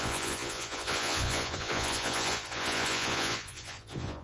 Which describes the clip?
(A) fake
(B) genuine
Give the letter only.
A